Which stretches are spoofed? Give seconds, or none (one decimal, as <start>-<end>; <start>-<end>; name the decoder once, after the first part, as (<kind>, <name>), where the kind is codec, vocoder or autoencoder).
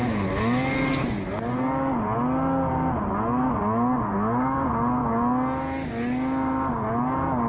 none